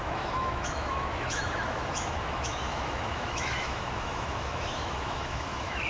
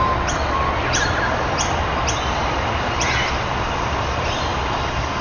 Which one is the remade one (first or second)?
first